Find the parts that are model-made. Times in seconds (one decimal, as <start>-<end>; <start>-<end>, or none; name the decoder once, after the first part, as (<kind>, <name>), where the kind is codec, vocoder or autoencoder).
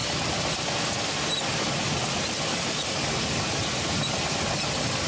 none